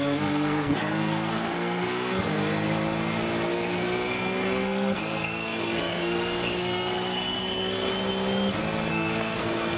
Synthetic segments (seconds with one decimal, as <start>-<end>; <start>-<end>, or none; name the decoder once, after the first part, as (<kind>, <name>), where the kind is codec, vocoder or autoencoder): 0.0-2.4 (codec, SNAC); 3.5-7.9; 8.9-9.8